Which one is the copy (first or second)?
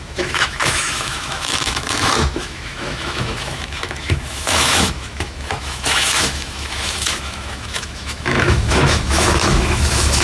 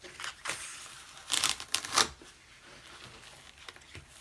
first